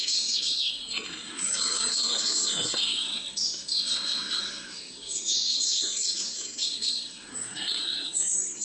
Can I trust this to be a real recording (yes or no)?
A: no